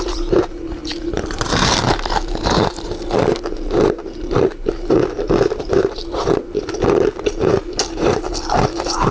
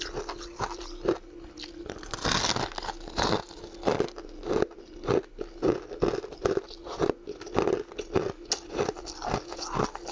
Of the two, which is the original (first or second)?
second